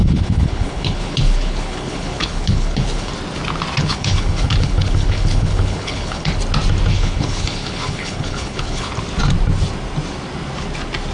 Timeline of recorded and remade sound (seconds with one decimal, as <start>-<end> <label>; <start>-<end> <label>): 0.0-3.1 remade; 3.1-3.8 recorded; 3.8-6.4 remade; 6.4-6.9 recorded; 6.9-8.9 remade; 8.9-11.1 recorded